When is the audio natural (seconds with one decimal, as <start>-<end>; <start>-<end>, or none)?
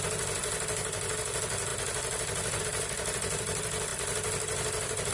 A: 0.0-5.1